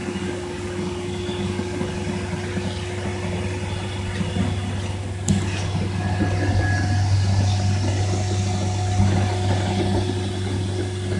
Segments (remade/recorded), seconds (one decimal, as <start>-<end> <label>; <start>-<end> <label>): 0.0-1.9 remade; 1.9-11.2 recorded